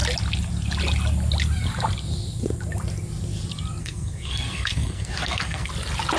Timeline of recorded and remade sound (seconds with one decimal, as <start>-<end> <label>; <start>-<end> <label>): 0.0-3.8 recorded; 3.8-5.7 remade; 5.7-6.2 recorded

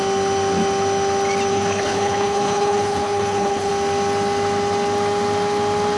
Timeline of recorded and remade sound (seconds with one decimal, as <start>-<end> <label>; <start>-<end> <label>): 0.0-1.5 recorded; 1.5-3.7 remade; 3.7-6.0 recorded

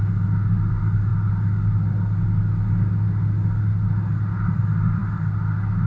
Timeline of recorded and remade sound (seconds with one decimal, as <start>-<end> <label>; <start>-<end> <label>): 0.0-5.9 recorded

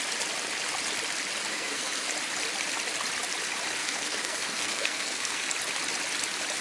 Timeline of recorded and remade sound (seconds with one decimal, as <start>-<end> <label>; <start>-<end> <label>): 0.0-1.5 recorded; 1.5-2.1 remade; 2.1-3.8 recorded; 3.8-5.5 remade; 5.5-6.6 recorded

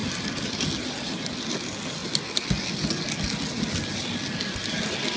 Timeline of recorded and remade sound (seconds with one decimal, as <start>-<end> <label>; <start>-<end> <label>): 0.0-5.2 recorded

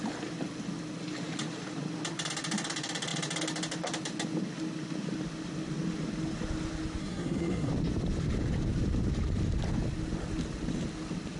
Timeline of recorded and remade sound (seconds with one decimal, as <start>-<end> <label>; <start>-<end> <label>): 0.0-7.0 recorded; 7.0-7.7 remade; 7.7-11.4 recorded

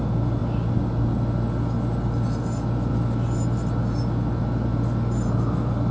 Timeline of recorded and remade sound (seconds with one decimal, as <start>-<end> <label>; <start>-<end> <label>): 0.0-5.9 recorded

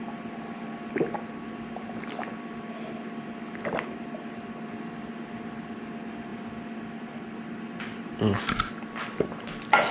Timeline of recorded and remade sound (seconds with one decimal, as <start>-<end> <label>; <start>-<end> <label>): 0.0-9.9 recorded